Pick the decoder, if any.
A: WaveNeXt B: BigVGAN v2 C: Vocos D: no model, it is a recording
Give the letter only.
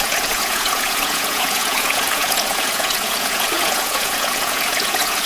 C